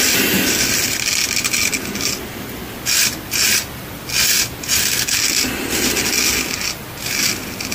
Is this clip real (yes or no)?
yes